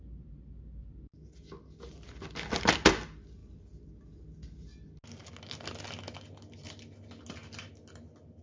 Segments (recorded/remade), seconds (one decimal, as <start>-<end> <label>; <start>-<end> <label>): 0.0-8.4 recorded